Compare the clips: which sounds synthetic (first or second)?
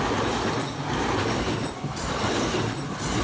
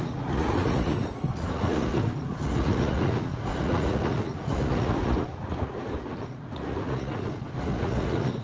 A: second